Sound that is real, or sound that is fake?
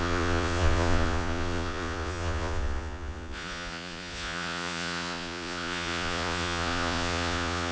fake